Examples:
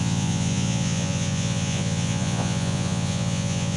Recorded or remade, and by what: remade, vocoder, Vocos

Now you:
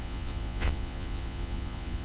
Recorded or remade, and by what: remade, vocoder, Vocos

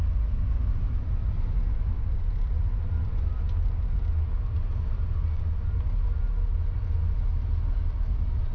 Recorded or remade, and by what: recorded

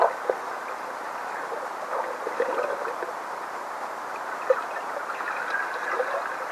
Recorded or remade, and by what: recorded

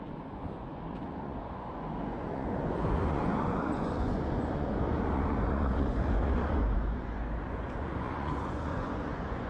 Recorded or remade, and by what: remade, vocoder, Vocos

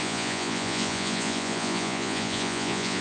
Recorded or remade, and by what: remade, vocoder, Vocos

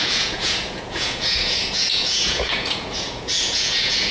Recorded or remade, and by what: remade, vocoder, Vocos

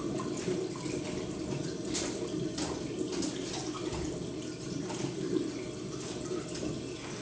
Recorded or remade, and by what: recorded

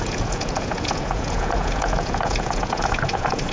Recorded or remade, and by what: remade, vocoder, Vocos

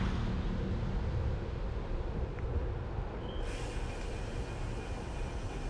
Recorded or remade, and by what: recorded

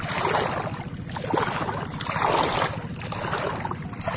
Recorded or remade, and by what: recorded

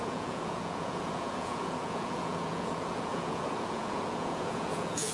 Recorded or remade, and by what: remade, vocoder, Vocos